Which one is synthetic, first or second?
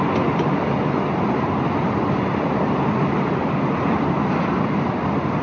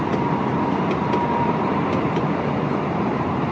second